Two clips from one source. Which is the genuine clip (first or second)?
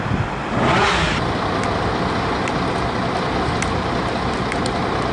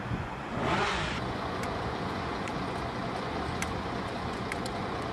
first